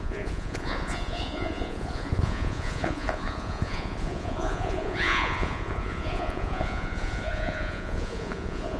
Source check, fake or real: fake